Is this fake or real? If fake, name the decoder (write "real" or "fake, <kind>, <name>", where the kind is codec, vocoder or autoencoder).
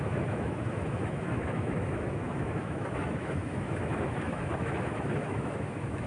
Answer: fake, autoencoder, DAC-VAE